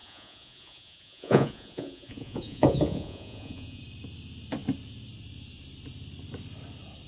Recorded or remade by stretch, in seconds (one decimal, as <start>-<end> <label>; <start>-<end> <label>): 0.0-3.8 remade; 3.8-7.1 recorded